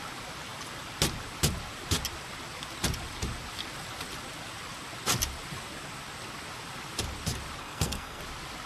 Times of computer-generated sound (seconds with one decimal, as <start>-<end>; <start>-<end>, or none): 7.6-8.2